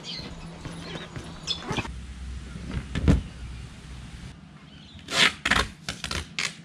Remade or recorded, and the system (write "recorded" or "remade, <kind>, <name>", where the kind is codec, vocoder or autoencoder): recorded